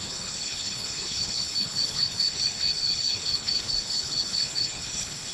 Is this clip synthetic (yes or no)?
yes